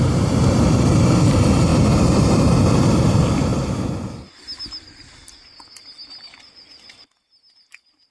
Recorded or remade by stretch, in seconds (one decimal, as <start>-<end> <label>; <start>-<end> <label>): 0.0-8.1 recorded